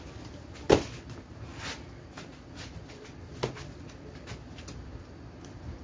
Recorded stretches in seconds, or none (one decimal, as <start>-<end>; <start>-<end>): 0.0-5.8